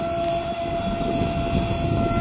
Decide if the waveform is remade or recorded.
recorded